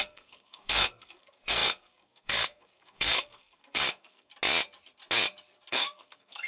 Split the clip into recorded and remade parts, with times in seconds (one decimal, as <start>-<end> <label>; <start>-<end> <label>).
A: 0.0-4.3 remade; 4.3-5.7 recorded; 5.7-6.5 remade